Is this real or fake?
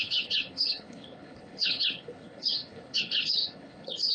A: fake